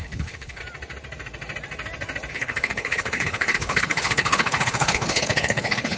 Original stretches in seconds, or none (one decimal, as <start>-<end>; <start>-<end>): 0.6-2.3